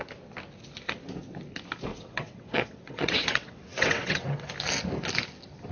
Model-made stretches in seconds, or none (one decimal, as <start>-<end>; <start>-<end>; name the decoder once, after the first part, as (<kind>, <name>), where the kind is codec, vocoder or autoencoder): 1.9-4.5 (vocoder, WaveNeXt)